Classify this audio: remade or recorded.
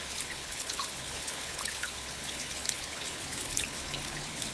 remade